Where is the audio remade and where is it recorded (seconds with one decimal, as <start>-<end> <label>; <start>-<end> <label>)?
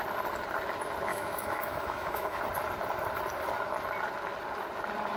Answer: 0.0-1.1 recorded; 1.1-2.4 remade; 2.4-5.2 recorded